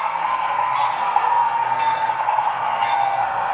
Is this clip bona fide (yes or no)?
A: no